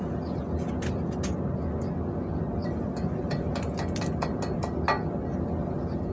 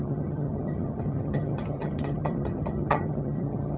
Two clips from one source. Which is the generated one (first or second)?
second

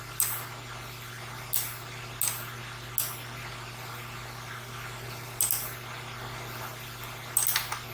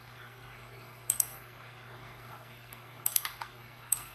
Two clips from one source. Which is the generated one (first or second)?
second